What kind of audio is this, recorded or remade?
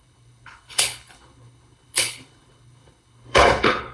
remade